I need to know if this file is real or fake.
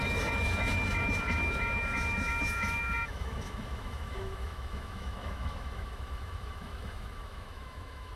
fake